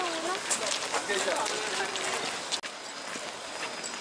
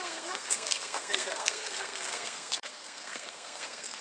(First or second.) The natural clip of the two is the first